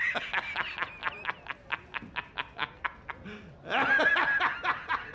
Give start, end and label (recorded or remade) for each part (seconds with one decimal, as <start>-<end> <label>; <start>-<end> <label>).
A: 0.0-5.1 recorded